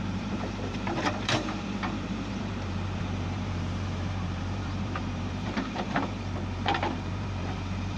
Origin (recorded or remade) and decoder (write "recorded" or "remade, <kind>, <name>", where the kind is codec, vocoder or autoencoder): remade, vocoder, BigVGAN v2